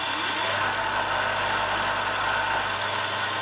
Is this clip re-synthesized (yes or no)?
no